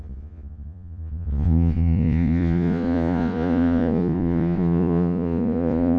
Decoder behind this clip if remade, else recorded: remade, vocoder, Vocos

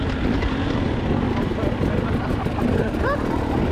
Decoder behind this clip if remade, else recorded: recorded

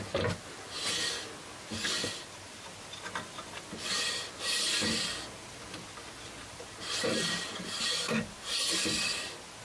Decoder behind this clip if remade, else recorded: recorded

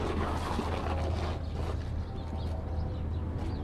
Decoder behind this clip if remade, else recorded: recorded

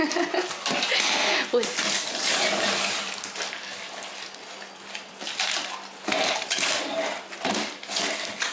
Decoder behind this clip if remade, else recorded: recorded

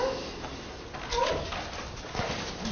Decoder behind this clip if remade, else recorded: recorded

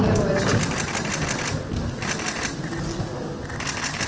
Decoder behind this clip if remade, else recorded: recorded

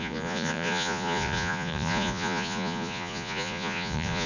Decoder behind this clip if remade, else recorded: remade, vocoder, Vocos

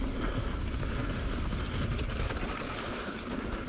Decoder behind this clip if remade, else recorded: recorded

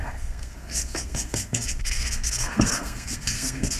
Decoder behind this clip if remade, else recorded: remade, codec, SNAC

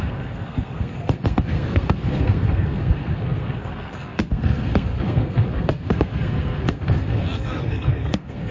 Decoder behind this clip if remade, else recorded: remade, codec, SNAC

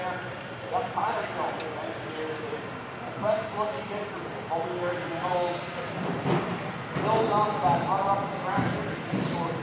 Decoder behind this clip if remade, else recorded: recorded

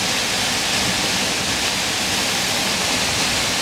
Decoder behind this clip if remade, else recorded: recorded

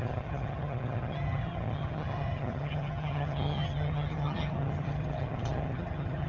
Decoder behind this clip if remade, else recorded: remade, vocoder, HiFi-GAN